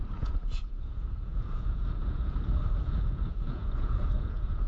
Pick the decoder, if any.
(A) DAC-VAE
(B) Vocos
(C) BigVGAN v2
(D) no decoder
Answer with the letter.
B